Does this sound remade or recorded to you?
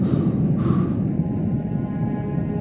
recorded